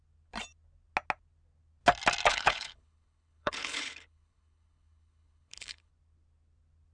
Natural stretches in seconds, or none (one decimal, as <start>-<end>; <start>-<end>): 0.0-2.3; 5.9-6.9